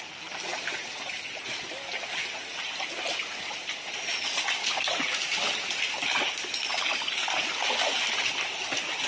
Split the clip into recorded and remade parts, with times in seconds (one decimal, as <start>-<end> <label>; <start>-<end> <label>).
0.0-9.1 recorded